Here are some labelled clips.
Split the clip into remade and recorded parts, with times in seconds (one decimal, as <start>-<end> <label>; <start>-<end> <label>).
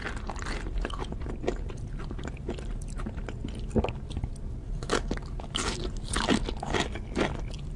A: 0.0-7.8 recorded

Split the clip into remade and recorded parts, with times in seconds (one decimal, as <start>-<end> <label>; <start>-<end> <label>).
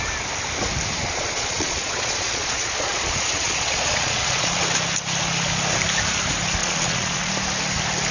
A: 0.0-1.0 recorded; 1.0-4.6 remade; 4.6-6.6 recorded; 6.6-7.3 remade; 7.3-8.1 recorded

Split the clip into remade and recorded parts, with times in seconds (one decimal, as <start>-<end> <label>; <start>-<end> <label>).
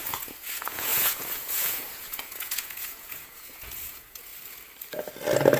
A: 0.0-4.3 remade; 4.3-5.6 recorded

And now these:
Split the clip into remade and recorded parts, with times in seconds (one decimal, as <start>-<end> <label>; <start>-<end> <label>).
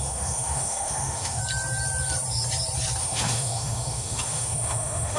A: 0.0-1.4 remade; 1.4-3.0 recorded; 3.0-5.2 remade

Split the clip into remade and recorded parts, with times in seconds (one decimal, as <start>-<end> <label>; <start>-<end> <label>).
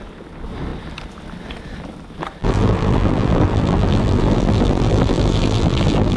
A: 0.0-2.4 recorded; 2.4-6.2 remade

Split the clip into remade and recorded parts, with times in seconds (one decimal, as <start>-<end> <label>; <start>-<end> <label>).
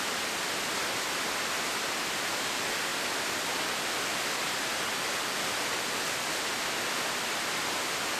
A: 0.0-8.2 recorded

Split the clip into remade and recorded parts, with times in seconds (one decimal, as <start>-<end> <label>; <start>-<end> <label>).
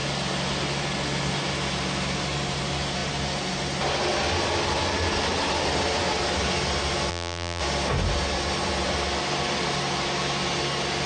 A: 0.0-7.1 recorded; 7.1-7.6 remade; 7.6-11.1 recorded